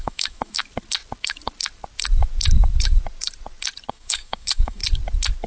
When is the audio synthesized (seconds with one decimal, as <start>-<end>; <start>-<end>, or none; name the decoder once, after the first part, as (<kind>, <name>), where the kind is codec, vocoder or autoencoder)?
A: 0.0-0.6 (autoencoder, DAC-VAE); 3.9-4.8